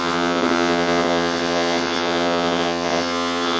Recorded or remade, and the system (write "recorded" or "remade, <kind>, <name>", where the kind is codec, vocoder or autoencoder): remade, vocoder, WaveNeXt